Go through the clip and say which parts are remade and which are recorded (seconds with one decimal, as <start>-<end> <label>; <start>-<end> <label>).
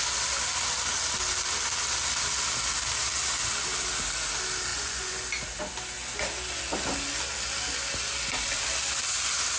0.0-4.7 recorded; 4.7-5.3 remade; 5.3-9.6 recorded